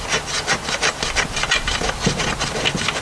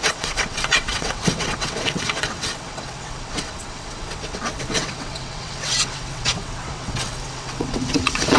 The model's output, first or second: second